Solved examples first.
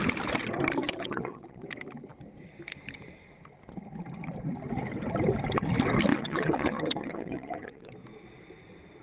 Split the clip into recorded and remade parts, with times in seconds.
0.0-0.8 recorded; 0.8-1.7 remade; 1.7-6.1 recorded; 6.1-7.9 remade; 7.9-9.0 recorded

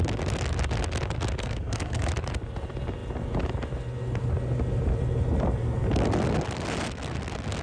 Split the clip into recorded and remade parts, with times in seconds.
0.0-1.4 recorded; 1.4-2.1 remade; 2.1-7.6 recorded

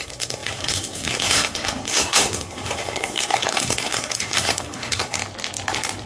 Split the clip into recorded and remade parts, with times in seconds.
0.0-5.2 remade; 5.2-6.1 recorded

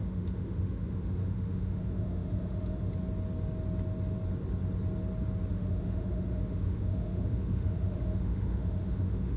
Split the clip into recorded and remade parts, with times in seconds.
0.0-2.9 remade; 2.9-5.5 recorded; 5.5-9.4 remade

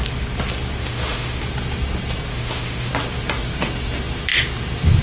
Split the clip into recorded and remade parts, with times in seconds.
0.0-0.8 recorded; 0.8-1.4 remade; 1.4-2.3 recorded; 2.3-2.9 remade; 2.9-5.0 recorded

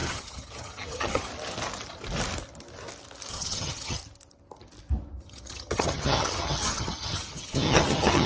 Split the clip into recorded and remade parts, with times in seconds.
0.0-1.3 remade; 1.3-3.3 recorded; 3.3-4.0 remade; 4.0-5.2 recorded; 5.2-8.3 remade

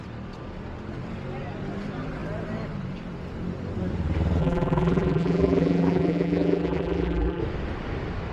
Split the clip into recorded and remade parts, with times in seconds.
0.0-4.4 recorded; 4.4-7.4 remade; 7.4-8.3 recorded

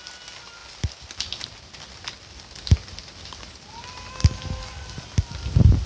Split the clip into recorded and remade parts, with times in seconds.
0.0-5.9 recorded